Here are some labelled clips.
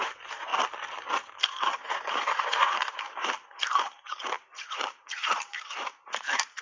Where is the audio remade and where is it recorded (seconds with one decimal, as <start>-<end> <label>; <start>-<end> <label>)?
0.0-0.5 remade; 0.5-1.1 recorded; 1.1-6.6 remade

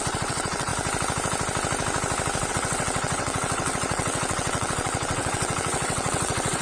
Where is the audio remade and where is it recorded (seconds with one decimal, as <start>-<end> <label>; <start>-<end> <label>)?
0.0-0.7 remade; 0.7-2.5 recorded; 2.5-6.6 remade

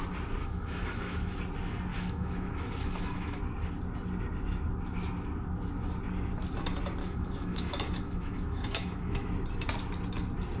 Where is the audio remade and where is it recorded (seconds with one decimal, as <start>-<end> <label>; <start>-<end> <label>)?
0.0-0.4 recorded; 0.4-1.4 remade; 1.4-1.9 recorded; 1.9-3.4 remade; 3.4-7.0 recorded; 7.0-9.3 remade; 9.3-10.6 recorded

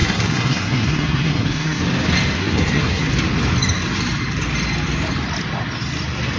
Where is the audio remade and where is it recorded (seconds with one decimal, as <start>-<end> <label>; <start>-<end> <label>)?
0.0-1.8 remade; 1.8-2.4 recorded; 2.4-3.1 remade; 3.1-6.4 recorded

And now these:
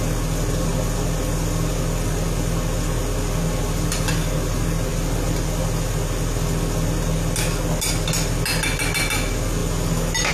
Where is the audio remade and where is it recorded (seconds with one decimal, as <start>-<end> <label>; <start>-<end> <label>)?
0.0-10.3 recorded

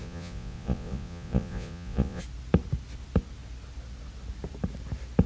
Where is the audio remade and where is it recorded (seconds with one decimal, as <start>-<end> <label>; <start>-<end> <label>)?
0.0-2.2 remade; 2.2-5.3 recorded

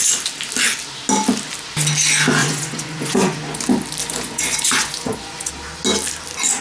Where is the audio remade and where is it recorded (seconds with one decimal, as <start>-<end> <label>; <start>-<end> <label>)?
0.0-2.4 recorded; 2.4-3.6 remade; 3.6-4.0 recorded; 4.0-5.5 remade; 5.5-6.6 recorded

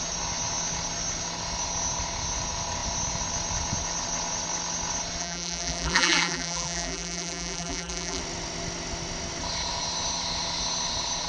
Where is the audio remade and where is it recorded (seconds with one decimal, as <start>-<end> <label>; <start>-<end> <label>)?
0.0-5.2 recorded; 5.2-8.2 remade; 8.2-11.3 recorded